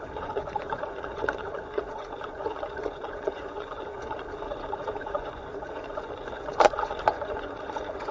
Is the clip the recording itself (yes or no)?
no